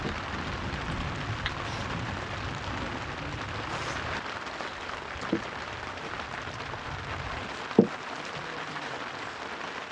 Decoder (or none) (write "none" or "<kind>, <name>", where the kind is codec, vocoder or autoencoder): none